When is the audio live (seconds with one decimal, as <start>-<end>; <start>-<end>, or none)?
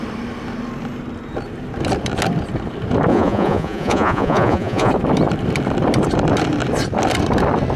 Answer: 0.0-3.1; 4.9-7.8